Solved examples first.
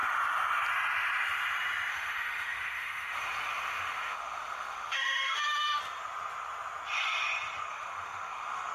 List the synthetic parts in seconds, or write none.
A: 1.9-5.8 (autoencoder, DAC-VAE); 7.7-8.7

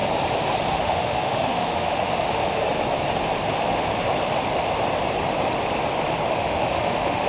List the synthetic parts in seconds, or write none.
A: 0.7-2.6 (autoencoder, DAC-VAE); 6.3-7.3